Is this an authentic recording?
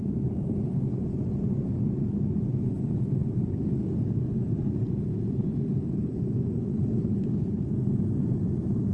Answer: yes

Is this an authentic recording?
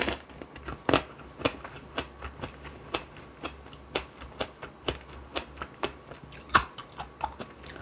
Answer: yes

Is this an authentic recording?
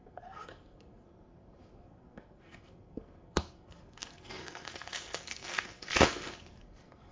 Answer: no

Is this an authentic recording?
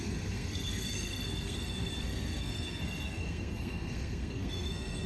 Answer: no